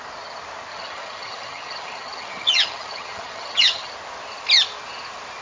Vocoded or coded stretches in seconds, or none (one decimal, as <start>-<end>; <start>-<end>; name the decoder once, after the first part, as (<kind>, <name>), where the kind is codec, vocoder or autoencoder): 0.7-3.9 (vocoder, HiFi-GAN)